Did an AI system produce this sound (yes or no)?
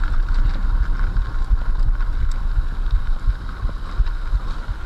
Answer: no